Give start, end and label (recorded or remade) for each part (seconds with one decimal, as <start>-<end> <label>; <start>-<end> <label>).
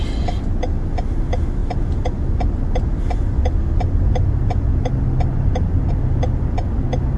0.0-7.2 recorded